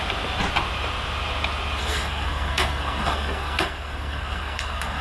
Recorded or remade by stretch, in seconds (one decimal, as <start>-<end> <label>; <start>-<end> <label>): 0.0-1.8 recorded; 1.8-5.0 remade